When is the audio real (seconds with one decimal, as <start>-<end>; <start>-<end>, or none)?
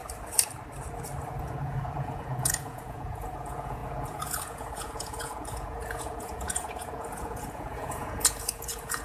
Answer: 0.0-1.4